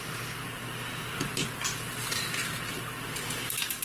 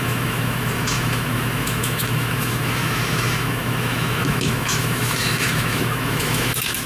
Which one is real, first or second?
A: first